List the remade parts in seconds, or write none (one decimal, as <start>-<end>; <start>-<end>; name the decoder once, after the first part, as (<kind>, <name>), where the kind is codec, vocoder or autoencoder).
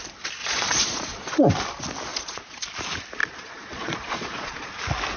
0.4-1.4 (vocoder, Vocos); 2.1-2.6; 3.2-4.7